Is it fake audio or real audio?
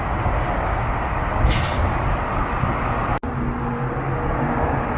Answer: real